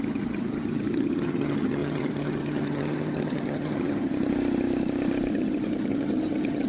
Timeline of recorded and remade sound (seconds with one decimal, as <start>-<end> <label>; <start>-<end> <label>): 0.0-4.1 remade; 4.1-5.3 recorded; 5.3-6.7 remade